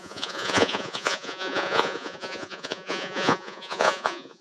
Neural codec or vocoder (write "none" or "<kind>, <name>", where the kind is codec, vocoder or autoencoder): vocoder, Vocos